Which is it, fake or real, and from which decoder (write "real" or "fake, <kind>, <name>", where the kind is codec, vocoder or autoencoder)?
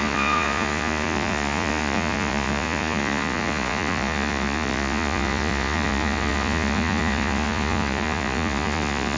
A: fake, vocoder, Vocos